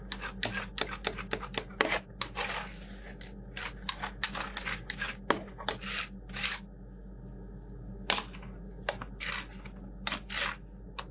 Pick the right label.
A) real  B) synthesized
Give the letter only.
A